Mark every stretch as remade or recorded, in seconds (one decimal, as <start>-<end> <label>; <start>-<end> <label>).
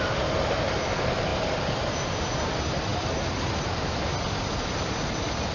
0.0-5.5 recorded